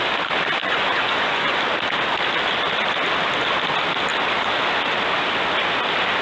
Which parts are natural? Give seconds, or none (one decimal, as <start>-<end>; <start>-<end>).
0.0-0.6; 1.6-6.2